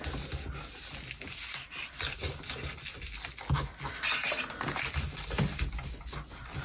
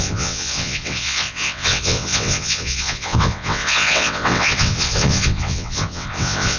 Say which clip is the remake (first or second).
second